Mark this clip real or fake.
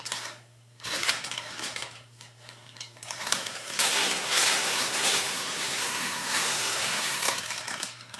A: fake